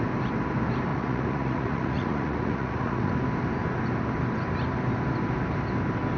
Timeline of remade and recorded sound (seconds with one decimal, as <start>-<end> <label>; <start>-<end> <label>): 0.0-0.9 recorded; 0.9-3.1 remade; 3.1-6.2 recorded